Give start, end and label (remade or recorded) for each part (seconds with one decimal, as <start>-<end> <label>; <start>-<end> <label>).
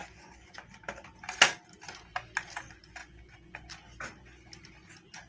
0.0-0.7 remade; 0.7-3.0 recorded; 3.0-3.7 remade; 3.7-5.3 recorded